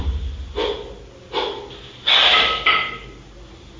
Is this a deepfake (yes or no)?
no